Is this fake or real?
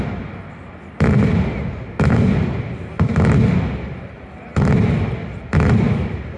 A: real